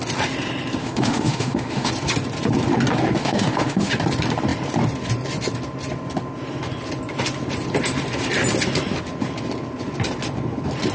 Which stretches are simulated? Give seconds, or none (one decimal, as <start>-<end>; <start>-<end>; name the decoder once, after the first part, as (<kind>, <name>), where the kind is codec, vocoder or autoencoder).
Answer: 0.8-1.9 (autoencoder, DAC-VAE); 3.2-3.9